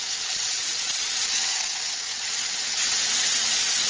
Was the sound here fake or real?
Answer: fake